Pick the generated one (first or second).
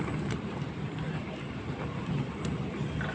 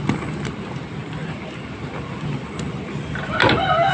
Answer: first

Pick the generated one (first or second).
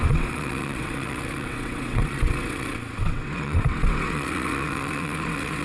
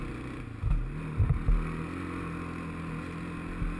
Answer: first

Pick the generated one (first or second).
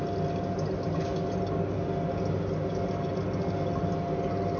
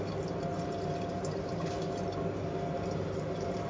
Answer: second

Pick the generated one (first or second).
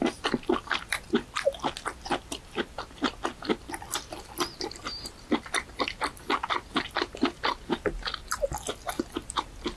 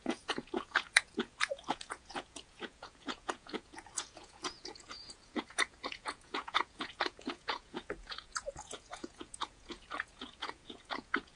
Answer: second